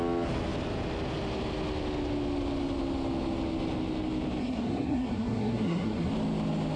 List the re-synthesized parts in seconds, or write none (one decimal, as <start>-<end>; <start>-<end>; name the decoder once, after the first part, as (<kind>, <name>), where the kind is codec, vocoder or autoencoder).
4.4-6.1 (codec, SNAC)